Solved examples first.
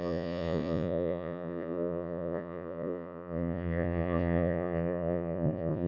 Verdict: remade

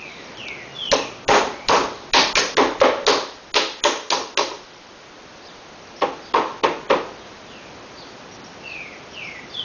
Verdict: recorded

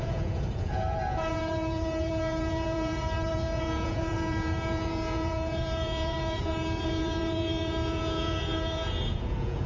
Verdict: remade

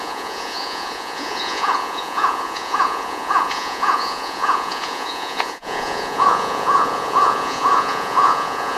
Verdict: remade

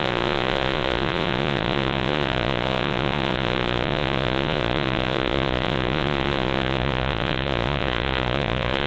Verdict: remade